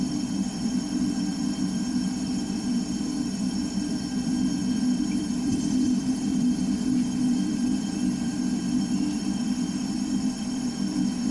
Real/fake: fake